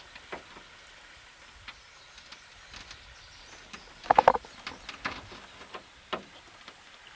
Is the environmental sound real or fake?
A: real